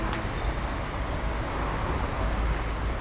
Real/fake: real